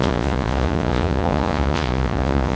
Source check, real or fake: fake